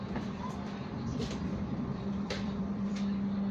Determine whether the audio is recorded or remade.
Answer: remade